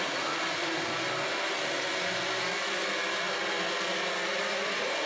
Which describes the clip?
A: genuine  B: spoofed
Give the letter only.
A